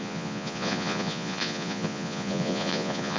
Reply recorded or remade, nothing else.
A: remade